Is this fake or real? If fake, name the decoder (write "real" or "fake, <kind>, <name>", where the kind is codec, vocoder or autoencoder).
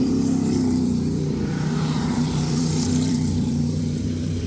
fake, vocoder, BigVGAN v2